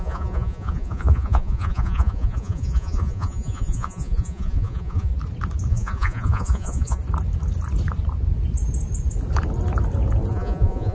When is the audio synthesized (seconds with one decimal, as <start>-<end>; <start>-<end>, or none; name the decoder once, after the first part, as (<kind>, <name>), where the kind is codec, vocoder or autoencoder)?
0.0-5.1 (vocoder, Vocos); 5.7-7.0; 10.3-10.9